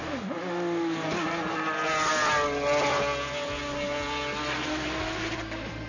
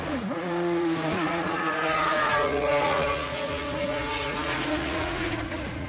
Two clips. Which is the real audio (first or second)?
first